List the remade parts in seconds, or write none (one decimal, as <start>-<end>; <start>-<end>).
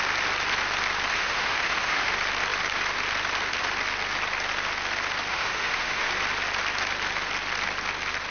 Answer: 1.1-2.1; 5.3-6.1